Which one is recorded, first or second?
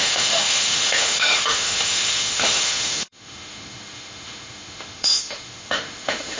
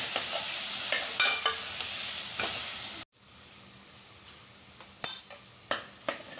second